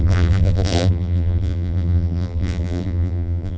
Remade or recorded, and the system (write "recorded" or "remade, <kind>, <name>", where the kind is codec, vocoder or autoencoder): remade, vocoder, BigVGAN v2